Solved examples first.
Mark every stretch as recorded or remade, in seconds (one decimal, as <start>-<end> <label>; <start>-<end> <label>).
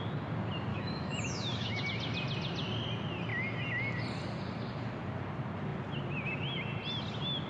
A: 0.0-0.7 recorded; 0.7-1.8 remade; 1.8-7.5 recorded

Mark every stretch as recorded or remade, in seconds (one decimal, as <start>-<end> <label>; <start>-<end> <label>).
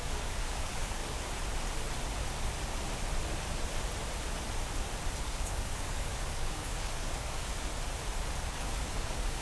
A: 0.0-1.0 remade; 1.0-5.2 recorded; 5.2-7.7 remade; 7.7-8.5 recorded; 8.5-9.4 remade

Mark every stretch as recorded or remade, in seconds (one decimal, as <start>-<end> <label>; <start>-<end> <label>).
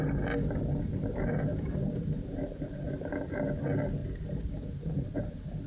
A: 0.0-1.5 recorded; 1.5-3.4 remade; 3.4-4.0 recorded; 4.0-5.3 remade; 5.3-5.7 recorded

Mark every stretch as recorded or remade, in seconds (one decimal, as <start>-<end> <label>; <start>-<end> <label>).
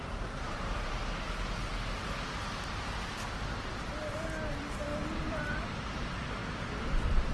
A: 0.0-0.9 remade; 0.9-4.9 recorded; 4.9-5.7 remade; 5.7-7.3 recorded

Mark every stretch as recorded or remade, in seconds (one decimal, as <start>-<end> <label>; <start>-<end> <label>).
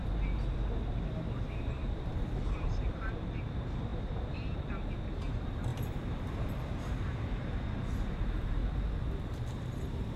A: 0.0-8.6 remade; 8.6-9.1 recorded; 9.1-10.2 remade